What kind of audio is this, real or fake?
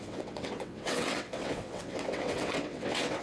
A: fake